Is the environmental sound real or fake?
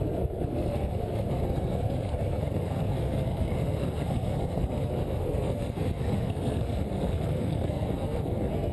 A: fake